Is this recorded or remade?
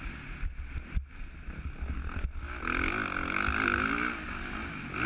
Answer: recorded